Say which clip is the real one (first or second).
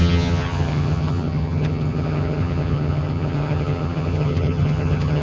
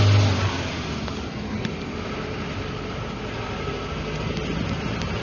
second